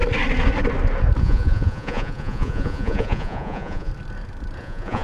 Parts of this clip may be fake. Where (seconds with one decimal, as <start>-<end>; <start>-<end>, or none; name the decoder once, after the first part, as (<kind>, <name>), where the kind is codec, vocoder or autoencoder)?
1.2-3.9 (vocoder, Vocos); 4.6-5.0